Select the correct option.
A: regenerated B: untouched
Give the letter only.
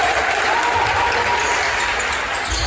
B